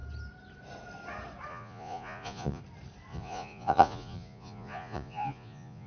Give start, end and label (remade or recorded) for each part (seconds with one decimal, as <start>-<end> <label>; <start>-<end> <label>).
0.0-1.5 recorded; 1.5-2.6 remade; 2.6-3.1 recorded; 3.1-5.9 remade